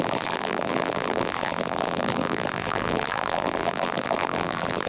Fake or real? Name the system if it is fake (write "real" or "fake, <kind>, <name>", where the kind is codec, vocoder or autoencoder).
fake, vocoder, BigVGAN v2